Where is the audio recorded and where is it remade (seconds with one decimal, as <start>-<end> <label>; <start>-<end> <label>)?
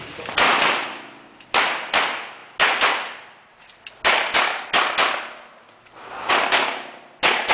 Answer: 0.0-7.5 recorded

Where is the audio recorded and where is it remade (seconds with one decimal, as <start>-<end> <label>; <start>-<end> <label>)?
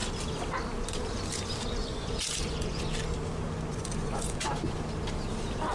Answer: 0.0-1.8 recorded; 1.8-2.8 remade; 2.8-3.7 recorded; 3.7-4.5 remade; 4.5-5.7 recorded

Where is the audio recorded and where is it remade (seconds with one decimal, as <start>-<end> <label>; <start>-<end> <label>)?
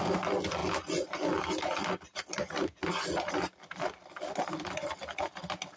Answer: 0.0-5.8 recorded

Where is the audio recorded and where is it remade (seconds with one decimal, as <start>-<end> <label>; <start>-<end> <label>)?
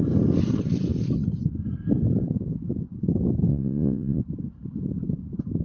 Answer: 0.0-3.5 recorded; 3.5-4.2 remade; 4.2-5.6 recorded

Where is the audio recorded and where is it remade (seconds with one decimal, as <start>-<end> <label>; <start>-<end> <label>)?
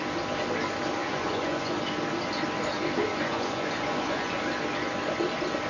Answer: 0.0-1.0 recorded; 1.0-1.7 remade; 1.7-3.1 recorded; 3.1-4.4 remade; 4.4-5.7 recorded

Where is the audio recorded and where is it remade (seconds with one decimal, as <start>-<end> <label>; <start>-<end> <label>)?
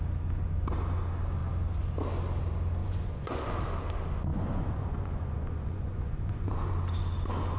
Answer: 0.0-2.8 recorded; 2.8-3.4 remade; 3.4-4.3 recorded; 4.3-6.7 remade; 6.7-7.6 recorded